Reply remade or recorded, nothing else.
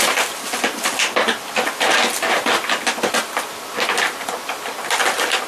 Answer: recorded